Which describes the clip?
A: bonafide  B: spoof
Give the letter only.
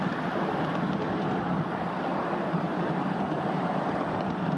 B